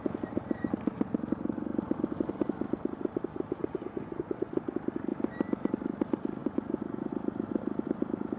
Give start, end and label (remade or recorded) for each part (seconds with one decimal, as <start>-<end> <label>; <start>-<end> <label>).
0.0-3.6 recorded; 3.6-4.5 remade; 4.5-6.4 recorded; 6.4-7.1 remade; 7.1-8.4 recorded